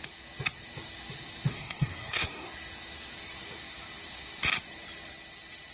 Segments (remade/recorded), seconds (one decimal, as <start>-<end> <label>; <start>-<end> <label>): 0.0-1.5 recorded; 1.5-2.5 remade; 2.5-5.7 recorded